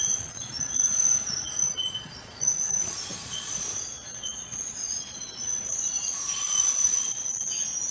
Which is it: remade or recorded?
remade